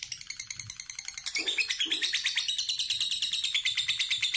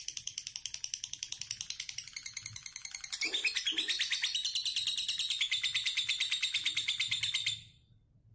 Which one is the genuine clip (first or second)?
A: second